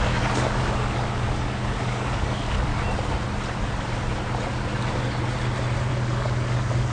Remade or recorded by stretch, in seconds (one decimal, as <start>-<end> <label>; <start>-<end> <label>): 0.0-2.7 remade; 2.7-5.9 recorded; 5.9-6.9 remade